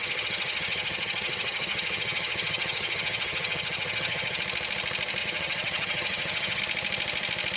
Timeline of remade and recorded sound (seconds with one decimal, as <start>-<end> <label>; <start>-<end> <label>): 0.0-4.4 remade; 4.4-5.2 recorded; 5.2-6.6 remade; 6.6-7.6 recorded